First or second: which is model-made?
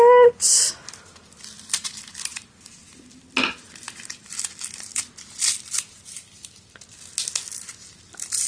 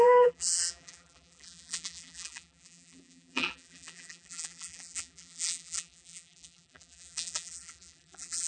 second